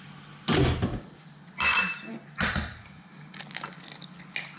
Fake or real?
real